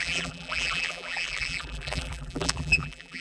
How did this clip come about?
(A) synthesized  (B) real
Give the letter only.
A